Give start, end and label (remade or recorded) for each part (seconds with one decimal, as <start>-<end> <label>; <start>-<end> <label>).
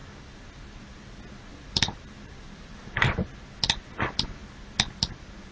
0.0-1.0 remade; 1.0-1.5 recorded; 1.5-2.9 remade; 2.9-5.5 recorded